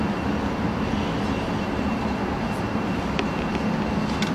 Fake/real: real